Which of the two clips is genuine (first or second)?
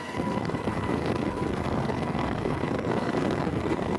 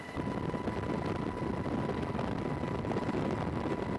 second